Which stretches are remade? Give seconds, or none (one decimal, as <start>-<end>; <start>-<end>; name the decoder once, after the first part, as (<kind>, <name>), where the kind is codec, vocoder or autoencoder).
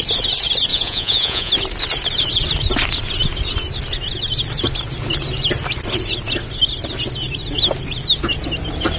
0.7-1.5 (vocoder, Vocos)